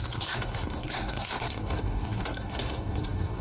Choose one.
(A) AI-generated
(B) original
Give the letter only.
A